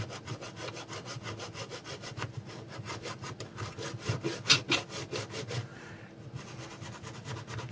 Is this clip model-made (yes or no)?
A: no